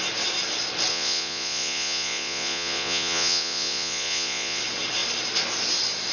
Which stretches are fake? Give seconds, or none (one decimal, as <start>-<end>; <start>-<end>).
0.9-4.6